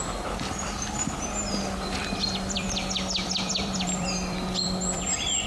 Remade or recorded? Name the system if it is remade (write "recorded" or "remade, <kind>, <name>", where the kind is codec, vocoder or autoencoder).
remade, vocoder, BigVGAN v2